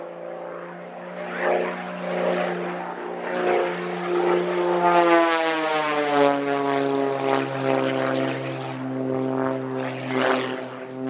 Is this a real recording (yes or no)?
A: yes